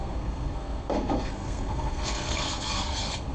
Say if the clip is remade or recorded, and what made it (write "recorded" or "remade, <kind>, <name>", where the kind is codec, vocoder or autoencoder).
remade, codec, SNAC